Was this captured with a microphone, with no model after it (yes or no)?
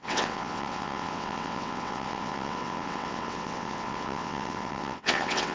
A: no